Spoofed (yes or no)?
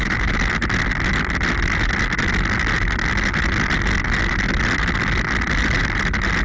no